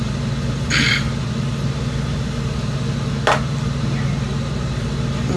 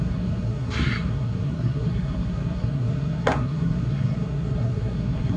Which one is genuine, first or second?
first